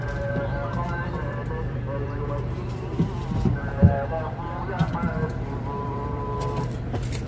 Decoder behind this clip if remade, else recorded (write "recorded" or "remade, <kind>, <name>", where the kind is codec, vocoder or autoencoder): remade, vocoder, BigVGAN v2